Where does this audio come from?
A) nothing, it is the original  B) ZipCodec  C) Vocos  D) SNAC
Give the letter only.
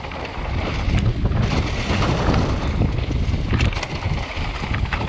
A